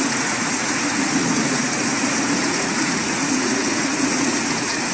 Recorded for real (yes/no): no